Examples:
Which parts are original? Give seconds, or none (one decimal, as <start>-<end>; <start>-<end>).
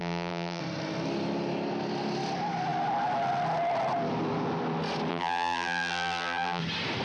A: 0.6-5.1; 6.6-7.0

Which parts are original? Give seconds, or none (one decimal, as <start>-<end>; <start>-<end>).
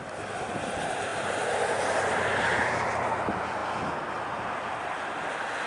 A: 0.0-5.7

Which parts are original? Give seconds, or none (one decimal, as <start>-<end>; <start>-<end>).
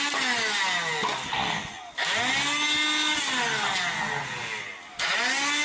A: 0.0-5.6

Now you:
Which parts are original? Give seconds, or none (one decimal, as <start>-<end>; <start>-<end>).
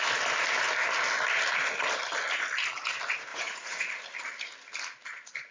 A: 0.0-3.3; 3.9-5.5